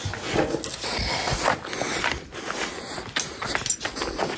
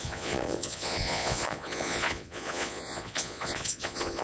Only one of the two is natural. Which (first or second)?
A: first